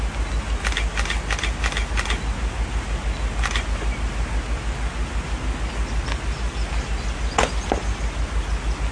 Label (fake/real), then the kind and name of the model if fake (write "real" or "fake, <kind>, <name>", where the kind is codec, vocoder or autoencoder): real